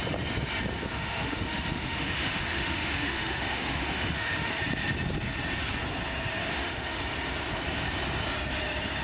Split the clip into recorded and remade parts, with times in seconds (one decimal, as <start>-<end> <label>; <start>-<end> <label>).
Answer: 0.0-0.9 recorded; 0.9-4.5 remade; 4.5-6.4 recorded; 6.4-7.0 remade; 7.0-9.0 recorded